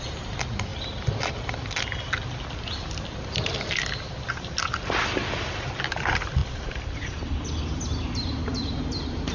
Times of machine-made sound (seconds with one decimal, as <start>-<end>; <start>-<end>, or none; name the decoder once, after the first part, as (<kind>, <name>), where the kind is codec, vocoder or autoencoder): none